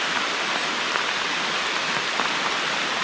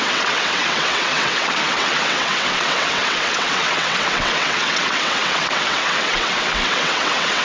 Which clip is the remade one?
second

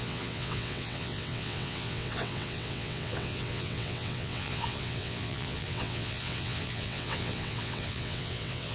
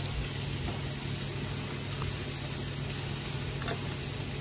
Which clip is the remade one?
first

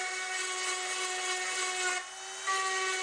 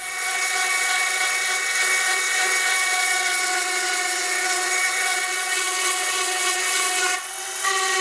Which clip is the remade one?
second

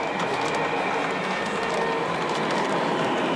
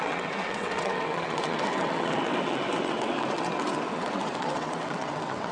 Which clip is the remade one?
second